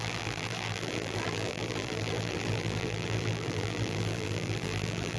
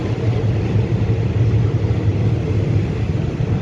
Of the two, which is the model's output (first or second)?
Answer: first